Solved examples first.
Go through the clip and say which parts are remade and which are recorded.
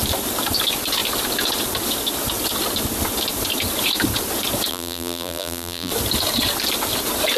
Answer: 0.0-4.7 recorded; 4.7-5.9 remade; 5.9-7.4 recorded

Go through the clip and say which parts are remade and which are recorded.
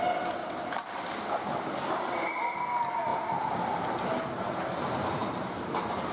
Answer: 0.0-0.4 recorded; 0.4-0.9 remade; 0.9-6.1 recorded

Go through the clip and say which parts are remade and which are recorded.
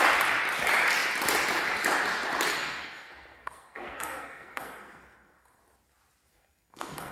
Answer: 0.0-2.5 recorded; 2.5-5.6 remade; 5.6-6.3 recorded; 6.3-7.1 remade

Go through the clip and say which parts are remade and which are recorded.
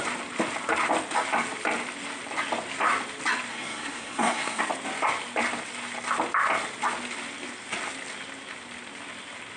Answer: 0.0-3.5 recorded; 3.5-4.6 remade; 4.6-9.6 recorded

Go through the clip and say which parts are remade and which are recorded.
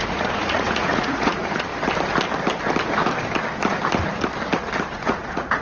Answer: 0.0-1.7 remade; 1.7-4.8 recorded; 4.8-5.6 remade